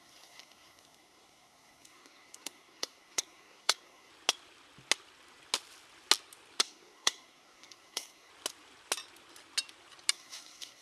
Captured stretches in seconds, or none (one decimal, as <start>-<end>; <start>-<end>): 4.1-6.6; 8.3-10.1

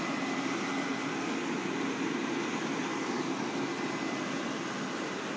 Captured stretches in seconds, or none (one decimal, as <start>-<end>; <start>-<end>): 0.0-5.4

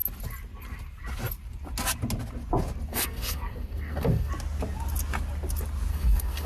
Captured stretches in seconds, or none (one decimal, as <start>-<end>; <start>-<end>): 0.0-2.9; 4.3-5.9